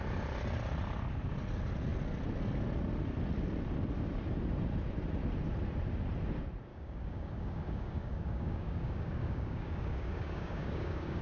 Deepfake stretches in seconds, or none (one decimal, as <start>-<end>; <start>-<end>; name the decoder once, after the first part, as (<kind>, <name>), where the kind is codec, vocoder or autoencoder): 6.7-11.2 (codec, DAC)